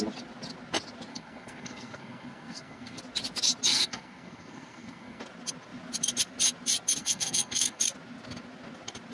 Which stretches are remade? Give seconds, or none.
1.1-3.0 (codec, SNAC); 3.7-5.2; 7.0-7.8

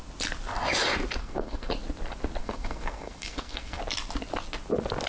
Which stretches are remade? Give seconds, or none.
1.2-1.7 (codec, SNAC); 2.4-3.8